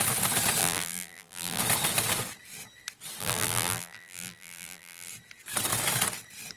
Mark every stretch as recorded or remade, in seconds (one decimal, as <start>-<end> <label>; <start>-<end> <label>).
0.0-0.6 recorded; 0.6-1.6 remade; 1.6-3.2 recorded; 3.2-5.1 remade; 5.1-6.6 recorded